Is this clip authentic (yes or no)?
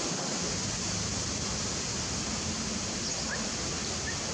yes